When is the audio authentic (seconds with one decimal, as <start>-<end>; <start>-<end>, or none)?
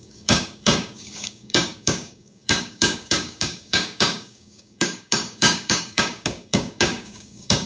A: none